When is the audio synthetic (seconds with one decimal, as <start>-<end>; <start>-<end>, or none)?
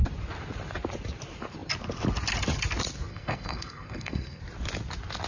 3.1-4.4